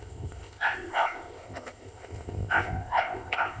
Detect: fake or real fake